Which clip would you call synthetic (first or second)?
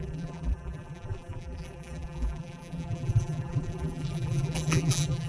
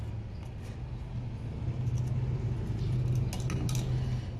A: first